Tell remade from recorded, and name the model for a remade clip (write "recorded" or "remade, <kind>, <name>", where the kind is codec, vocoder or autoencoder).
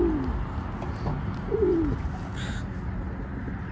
recorded